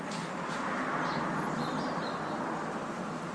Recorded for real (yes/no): yes